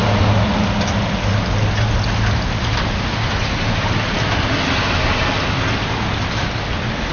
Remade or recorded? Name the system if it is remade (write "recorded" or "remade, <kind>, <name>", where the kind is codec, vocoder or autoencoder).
recorded